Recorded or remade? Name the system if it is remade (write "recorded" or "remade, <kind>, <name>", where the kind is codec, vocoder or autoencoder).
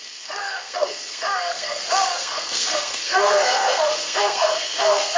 remade, codec, SNAC